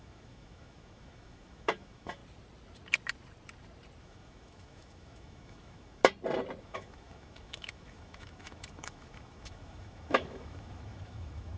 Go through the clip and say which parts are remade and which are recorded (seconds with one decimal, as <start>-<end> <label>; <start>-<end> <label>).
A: 0.0-2.2 remade; 2.2-4.0 recorded; 4.0-6.0 remade; 6.0-6.6 recorded; 6.6-11.6 remade